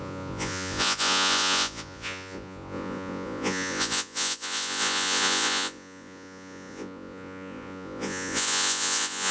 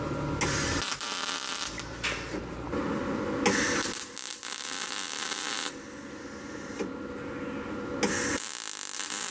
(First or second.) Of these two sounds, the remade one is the first